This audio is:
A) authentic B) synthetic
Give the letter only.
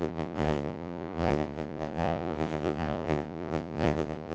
B